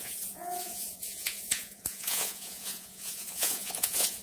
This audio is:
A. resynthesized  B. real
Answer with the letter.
A